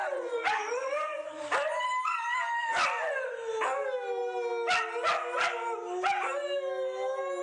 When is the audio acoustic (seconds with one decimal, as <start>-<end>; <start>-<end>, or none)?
1.4-7.4

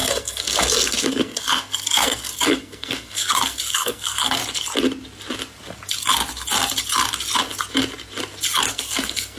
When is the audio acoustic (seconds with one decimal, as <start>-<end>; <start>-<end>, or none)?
4.4-8.7